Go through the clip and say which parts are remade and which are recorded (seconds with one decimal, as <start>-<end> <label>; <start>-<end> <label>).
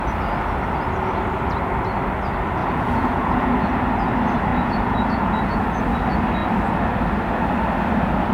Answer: 0.0-2.6 recorded; 2.6-3.5 remade; 3.5-4.5 recorded; 4.5-5.8 remade; 5.8-8.3 recorded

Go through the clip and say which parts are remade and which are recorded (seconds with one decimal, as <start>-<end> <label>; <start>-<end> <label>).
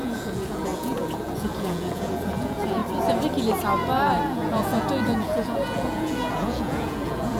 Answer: 0.0-2.8 remade; 2.8-4.2 recorded; 4.2-7.4 remade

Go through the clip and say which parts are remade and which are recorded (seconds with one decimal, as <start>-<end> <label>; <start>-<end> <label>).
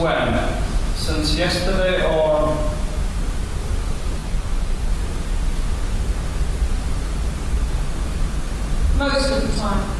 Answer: 0.0-4.2 recorded; 4.2-4.9 remade; 4.9-10.0 recorded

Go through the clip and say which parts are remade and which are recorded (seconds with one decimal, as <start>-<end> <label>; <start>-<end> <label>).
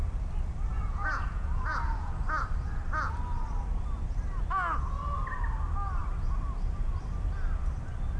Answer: 0.0-0.7 recorded; 0.7-2.2 remade; 2.2-8.2 recorded